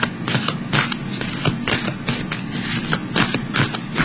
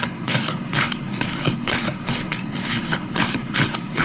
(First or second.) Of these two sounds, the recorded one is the first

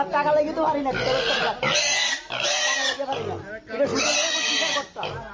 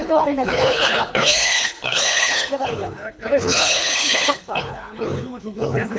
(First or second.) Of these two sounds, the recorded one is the first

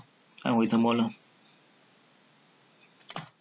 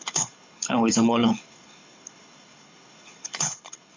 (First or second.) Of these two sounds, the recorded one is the first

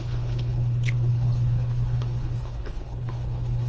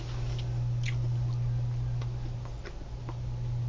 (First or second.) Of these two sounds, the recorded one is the second